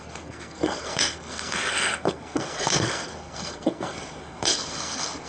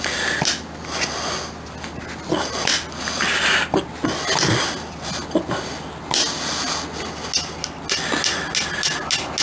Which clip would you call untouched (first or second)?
second